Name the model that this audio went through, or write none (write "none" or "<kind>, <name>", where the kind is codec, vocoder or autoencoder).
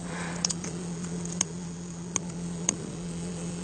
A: vocoder, Vocos